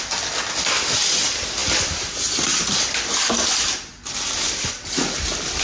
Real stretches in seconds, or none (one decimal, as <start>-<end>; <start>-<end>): 0.0-5.6